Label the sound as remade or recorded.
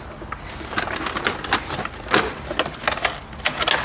recorded